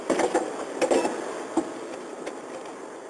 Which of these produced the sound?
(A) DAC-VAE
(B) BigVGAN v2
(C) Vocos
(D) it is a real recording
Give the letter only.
D